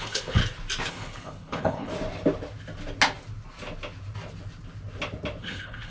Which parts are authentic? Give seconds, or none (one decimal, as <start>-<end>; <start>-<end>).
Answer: 0.4-0.9; 1.9-5.4